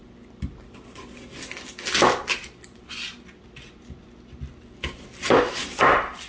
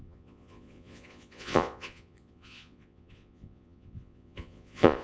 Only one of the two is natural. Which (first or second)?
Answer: first